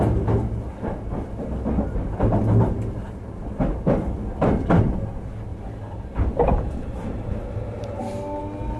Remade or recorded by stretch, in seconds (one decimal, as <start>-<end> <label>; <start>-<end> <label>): 0.0-8.8 recorded